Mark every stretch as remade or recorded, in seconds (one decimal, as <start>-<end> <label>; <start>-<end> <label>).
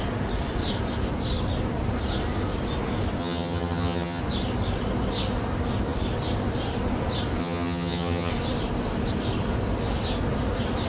0.0-3.2 recorded; 3.2-4.2 remade; 4.2-7.4 recorded; 7.4-8.3 remade; 8.3-10.9 recorded